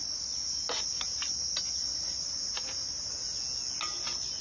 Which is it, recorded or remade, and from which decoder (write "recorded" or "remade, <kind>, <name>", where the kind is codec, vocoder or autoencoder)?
recorded